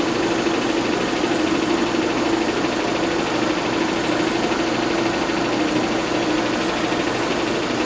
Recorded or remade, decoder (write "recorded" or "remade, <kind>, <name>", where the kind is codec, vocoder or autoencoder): recorded